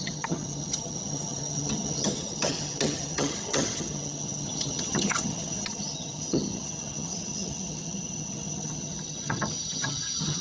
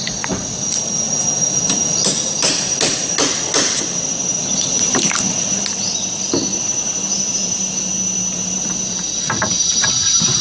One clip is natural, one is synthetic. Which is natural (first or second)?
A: second